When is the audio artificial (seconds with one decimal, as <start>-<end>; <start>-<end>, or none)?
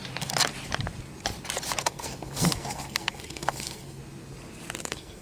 1.8-4.0; 4.8-5.2